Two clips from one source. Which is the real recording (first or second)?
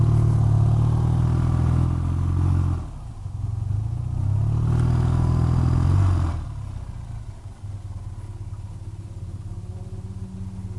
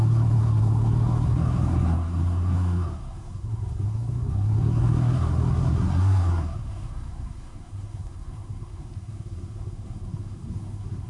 first